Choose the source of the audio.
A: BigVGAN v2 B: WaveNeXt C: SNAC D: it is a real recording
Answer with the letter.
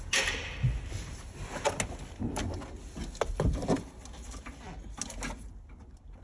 D